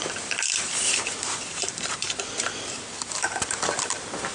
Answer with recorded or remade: remade